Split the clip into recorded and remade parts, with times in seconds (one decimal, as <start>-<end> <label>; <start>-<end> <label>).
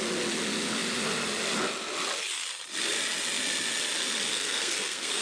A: 0.0-4.3 recorded; 4.3-5.2 remade